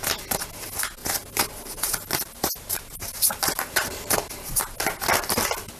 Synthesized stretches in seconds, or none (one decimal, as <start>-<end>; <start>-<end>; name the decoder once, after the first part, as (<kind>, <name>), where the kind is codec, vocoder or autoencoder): 1.0-4.5 (vocoder, BigVGAN v2)